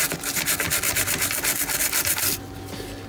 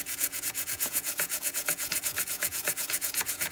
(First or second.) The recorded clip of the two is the first